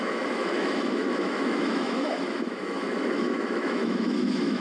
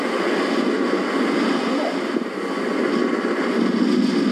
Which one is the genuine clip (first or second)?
second